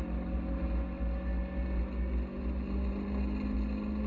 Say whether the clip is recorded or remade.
recorded